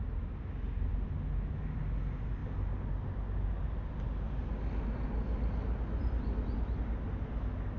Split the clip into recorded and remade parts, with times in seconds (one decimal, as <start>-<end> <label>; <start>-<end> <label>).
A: 0.0-7.8 recorded